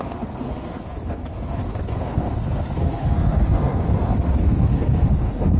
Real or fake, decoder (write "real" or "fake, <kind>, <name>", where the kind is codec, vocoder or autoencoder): fake, codec, SNAC